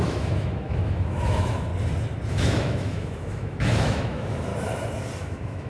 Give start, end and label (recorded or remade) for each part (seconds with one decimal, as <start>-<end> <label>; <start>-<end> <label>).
0.0-1.7 remade; 1.7-2.3 recorded; 2.3-4.5 remade; 4.5-5.2 recorded; 5.2-5.7 remade